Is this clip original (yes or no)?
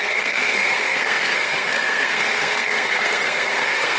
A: no